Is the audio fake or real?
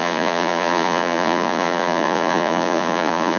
fake